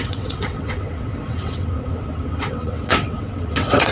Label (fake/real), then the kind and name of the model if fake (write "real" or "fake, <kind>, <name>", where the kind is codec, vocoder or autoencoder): fake, vocoder, WaveNeXt